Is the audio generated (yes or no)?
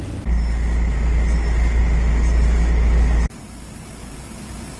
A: no